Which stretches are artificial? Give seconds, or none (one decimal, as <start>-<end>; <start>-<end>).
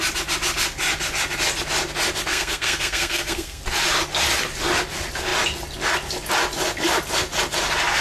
2.3-3.6